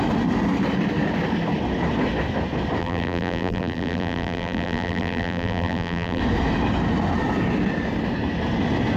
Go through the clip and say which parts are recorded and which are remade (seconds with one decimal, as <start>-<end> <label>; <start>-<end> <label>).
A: 0.0-2.8 recorded; 2.8-6.2 remade; 6.2-9.0 recorded